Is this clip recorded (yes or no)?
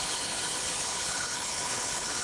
no